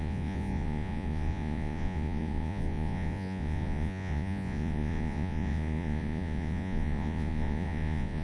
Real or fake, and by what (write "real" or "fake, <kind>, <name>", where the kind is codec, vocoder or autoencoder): fake, vocoder, Vocos